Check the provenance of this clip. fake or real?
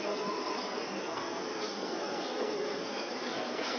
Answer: fake